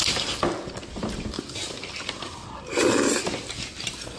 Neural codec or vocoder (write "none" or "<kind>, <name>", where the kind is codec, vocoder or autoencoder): none